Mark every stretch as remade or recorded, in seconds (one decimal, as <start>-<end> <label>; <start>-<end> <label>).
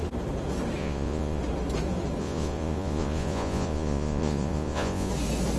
0.0-0.8 recorded; 0.8-1.4 remade; 1.4-2.2 recorded; 2.2-5.1 remade; 5.1-5.6 recorded